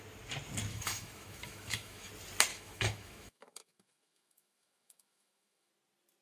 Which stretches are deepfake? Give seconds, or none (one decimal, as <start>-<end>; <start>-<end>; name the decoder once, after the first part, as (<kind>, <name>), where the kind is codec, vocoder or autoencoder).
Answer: 0.7-2.1 (autoencoder, DAC-VAE); 2.5-5.7